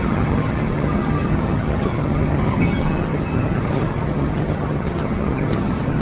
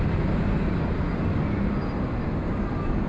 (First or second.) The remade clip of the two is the first